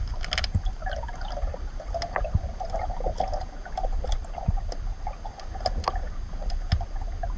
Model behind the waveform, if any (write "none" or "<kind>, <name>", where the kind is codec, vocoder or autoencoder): none